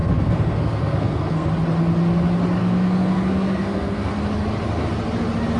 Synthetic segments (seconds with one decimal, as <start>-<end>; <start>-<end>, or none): 0.0-1.5; 2.6-4.1